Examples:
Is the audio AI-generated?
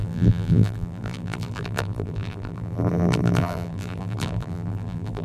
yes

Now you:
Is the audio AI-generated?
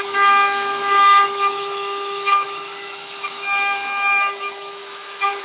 yes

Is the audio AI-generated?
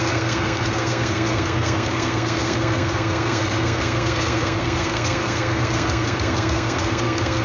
yes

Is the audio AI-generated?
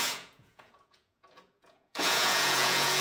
yes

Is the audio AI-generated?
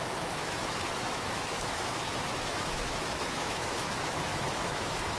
yes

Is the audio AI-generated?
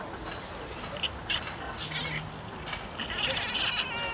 yes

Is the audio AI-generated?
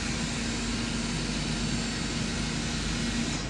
no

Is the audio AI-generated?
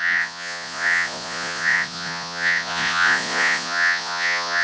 yes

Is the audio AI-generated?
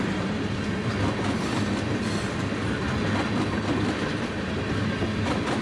no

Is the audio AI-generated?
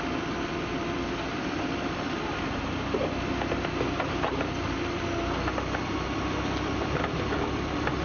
no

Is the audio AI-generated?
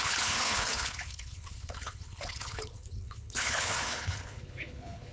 yes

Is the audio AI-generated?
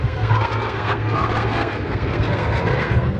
yes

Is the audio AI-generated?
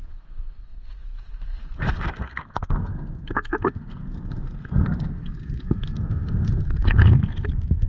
yes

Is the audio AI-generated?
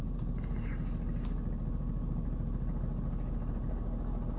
no